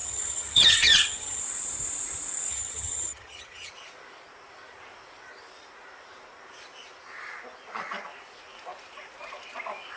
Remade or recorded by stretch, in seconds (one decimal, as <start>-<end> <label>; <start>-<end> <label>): 0.0-1.4 remade; 1.4-2.5 recorded; 2.5-3.7 remade; 3.7-10.0 recorded